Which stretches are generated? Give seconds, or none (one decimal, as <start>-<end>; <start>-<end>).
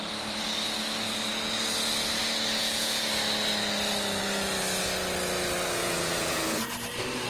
2.6-3.1; 5.8-6.6